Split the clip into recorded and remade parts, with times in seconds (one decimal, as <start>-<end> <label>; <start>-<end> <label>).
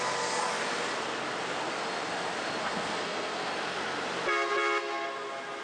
0.0-2.6 recorded; 2.6-3.5 remade; 3.5-5.6 recorded